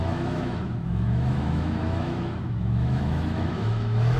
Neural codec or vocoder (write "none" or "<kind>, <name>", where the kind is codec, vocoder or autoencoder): autoencoder, DAC-VAE